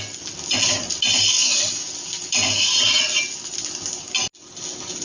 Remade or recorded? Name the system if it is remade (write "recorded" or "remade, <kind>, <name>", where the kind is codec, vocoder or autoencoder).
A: recorded